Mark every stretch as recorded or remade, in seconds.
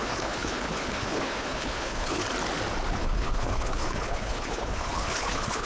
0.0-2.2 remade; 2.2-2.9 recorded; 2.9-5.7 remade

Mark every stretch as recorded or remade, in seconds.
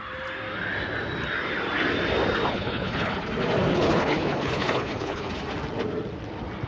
0.0-2.5 recorded; 2.5-3.3 remade; 3.3-3.7 recorded; 3.7-5.3 remade; 5.3-6.7 recorded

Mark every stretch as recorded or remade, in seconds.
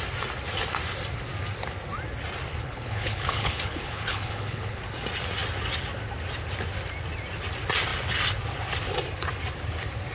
0.0-2.5 recorded; 2.5-4.8 remade; 4.8-10.1 recorded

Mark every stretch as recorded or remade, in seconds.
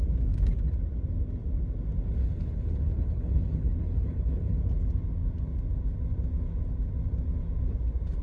0.0-2.2 recorded; 2.2-4.6 remade; 4.6-8.2 recorded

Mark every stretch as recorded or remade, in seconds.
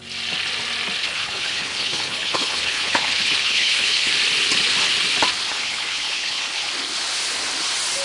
0.0-1.0 recorded; 1.0-4.1 remade; 4.1-5.5 recorded; 5.5-6.7 remade; 6.7-8.0 recorded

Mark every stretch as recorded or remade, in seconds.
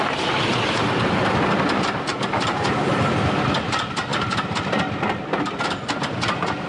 0.0-6.7 recorded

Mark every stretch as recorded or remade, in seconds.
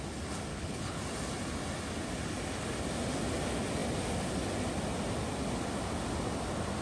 0.0-0.5 recorded; 0.5-1.0 remade; 1.0-6.8 recorded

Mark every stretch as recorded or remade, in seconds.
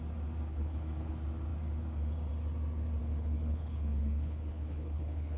0.0-0.5 recorded; 0.5-1.1 remade; 1.1-3.0 recorded; 3.0-5.4 remade